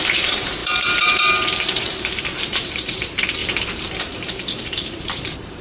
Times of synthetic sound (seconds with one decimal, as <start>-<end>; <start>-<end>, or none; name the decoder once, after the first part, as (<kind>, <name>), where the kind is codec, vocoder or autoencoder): 0.0-3.4 (vocoder, BigVGAN v2); 4.0-5.6